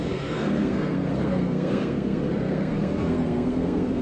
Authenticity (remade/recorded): remade